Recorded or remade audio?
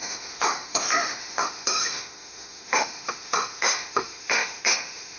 remade